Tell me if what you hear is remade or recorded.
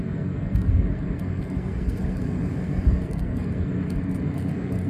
remade